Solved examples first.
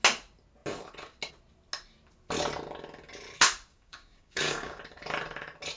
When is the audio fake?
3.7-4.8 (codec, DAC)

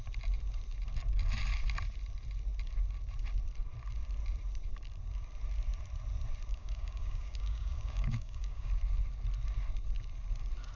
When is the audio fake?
6.5-8.7 (codec, DAC)

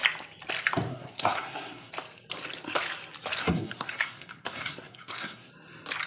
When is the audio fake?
0.9-1.9 (codec, SNAC); 3.4-5.5

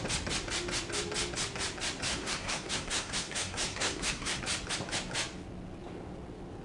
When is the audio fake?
2.1-4.4 (codec, SNAC)

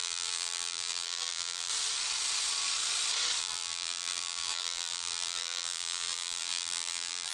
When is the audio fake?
0.0-1.7 (vocoder, BigVGAN v2); 3.4-7.3

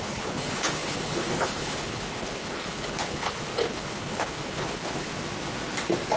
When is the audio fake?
0.0-5.1 (codec, HILCodec)

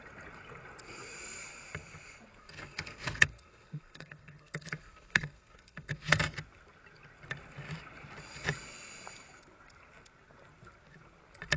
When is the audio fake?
2.4-6.2 (codec, SNAC)